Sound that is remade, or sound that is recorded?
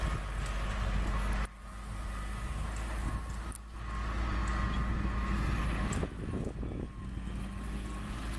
recorded